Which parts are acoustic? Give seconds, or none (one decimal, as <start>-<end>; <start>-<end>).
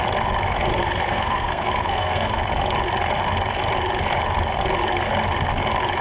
0.0-0.7; 2.4-6.0